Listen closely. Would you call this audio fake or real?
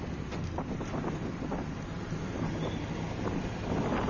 real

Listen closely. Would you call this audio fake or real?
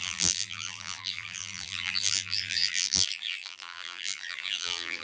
fake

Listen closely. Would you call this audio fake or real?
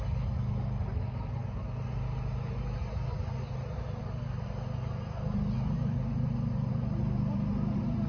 real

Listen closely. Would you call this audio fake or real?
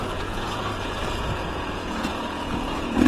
fake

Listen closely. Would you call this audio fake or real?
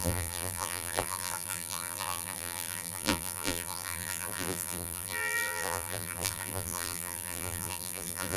fake